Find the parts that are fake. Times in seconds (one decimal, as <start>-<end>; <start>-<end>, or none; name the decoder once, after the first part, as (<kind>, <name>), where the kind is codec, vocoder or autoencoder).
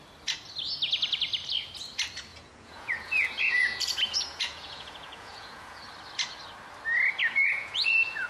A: 2.3-5.8 (vocoder, Vocos); 7.2-8.3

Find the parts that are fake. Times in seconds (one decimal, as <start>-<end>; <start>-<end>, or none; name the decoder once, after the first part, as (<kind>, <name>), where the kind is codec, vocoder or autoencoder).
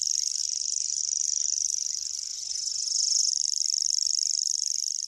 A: 2.3-3.3 (vocoder, Vocos)